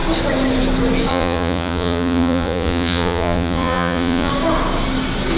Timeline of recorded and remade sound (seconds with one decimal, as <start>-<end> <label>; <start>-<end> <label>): 0.0-1.1 recorded; 1.1-4.3 remade; 4.3-5.4 recorded